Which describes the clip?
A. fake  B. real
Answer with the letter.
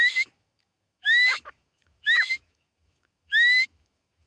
A